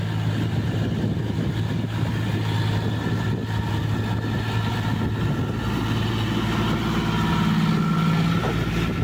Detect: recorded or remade recorded